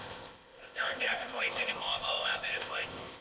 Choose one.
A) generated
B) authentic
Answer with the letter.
A